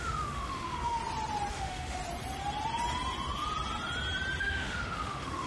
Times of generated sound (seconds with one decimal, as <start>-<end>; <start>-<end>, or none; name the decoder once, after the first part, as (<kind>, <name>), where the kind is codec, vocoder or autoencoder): 0.0-1.0 (autoencoder, DAC-VAE); 1.5-2.0; 4.4-5.5